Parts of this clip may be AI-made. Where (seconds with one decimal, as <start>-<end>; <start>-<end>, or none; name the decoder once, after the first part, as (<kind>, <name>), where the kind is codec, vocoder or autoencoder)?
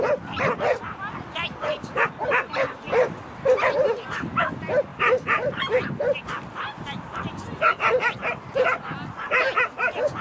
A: none